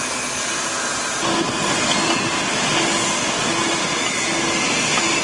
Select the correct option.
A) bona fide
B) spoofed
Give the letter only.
A